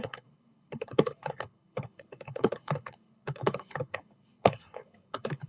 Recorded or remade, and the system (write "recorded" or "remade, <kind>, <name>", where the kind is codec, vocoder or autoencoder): remade, codec, HILCodec